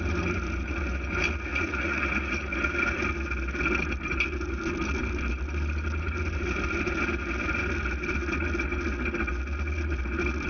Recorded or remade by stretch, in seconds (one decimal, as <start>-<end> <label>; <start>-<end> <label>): 0.0-1.5 recorded; 1.5-2.5 remade; 2.5-10.5 recorded